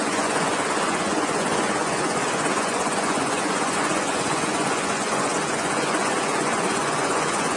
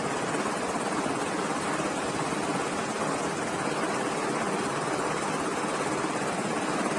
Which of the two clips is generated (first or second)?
first